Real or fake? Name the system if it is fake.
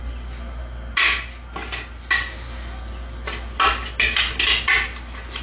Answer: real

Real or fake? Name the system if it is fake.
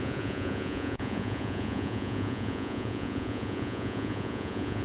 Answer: fake, vocoder, Vocos